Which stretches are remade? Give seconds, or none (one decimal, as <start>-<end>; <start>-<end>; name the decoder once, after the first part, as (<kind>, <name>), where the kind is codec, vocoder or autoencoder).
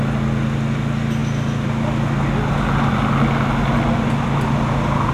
none